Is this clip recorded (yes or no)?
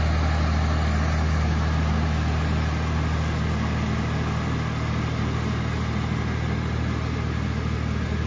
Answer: yes